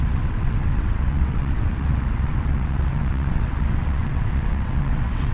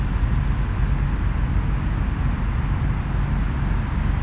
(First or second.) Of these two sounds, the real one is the second